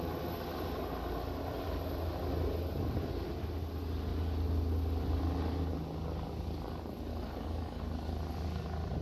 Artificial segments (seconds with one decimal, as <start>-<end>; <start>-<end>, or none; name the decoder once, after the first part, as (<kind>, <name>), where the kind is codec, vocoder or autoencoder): 7.1-7.8 (codec, DAC)